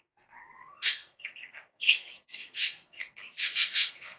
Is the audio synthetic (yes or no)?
yes